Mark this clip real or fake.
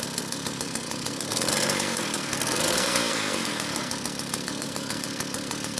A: fake